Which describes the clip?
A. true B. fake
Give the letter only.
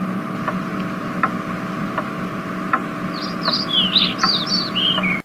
A